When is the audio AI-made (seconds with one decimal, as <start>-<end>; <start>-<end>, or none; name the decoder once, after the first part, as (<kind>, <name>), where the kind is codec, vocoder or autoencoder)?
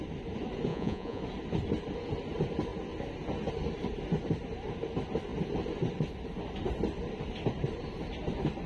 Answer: 0.7-1.2 (vocoder, Vocos)